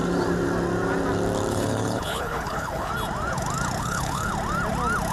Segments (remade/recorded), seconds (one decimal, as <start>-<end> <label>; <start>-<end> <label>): 0.0-1.5 recorded; 1.5-2.9 remade; 2.9-3.8 recorded; 3.8-4.3 remade; 4.3-5.1 recorded